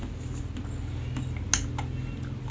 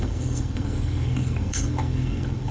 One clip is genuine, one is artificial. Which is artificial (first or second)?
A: second